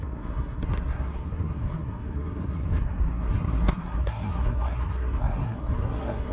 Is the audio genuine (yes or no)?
no